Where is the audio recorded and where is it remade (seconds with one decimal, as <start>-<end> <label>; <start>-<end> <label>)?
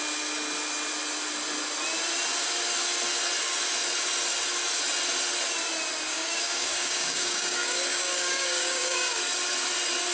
0.0-6.1 recorded; 6.1-9.2 remade; 9.2-10.1 recorded